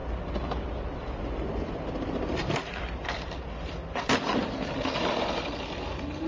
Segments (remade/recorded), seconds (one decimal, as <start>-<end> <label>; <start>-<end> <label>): 0.0-2.3 recorded; 2.3-3.8 remade; 3.8-5.3 recorded; 5.3-6.3 remade